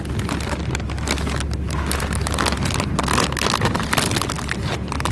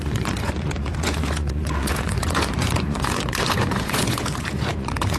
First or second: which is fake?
second